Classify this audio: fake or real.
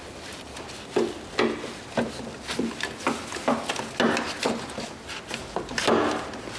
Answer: real